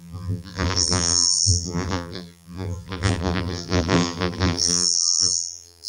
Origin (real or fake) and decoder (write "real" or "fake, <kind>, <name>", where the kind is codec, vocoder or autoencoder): fake, vocoder, BigVGAN v2